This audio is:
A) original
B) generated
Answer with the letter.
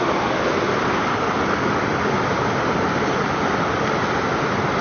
A